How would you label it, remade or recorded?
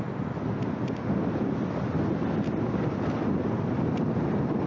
recorded